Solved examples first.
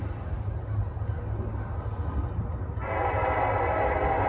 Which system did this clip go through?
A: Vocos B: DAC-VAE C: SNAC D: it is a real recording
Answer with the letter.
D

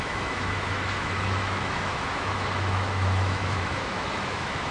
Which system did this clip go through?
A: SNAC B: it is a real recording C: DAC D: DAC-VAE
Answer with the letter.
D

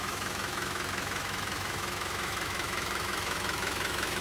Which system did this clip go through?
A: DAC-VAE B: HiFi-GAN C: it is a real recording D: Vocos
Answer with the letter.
A